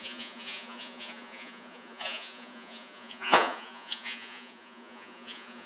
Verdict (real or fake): fake